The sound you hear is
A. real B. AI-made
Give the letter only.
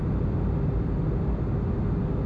A